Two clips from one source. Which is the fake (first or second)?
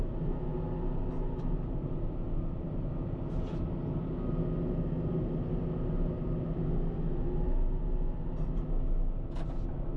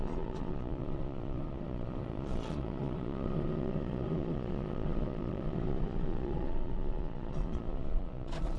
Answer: second